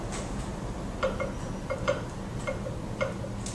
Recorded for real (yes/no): yes